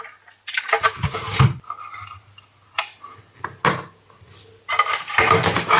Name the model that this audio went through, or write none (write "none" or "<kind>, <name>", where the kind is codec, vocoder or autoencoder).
none